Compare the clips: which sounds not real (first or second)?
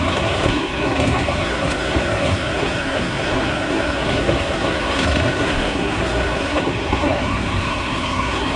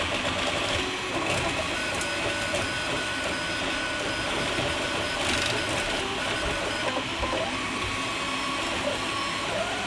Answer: first